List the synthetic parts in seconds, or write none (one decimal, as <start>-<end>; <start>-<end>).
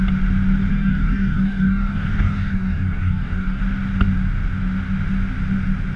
0.7-3.6